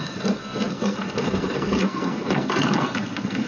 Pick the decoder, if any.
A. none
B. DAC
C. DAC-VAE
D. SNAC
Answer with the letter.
D